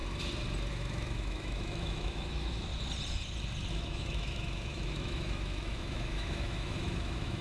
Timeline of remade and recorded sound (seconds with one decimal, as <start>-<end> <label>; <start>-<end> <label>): 0.0-0.7 recorded; 0.7-2.7 remade; 2.7-3.7 recorded; 3.7-7.4 remade